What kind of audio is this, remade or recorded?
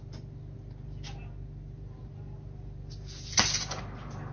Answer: recorded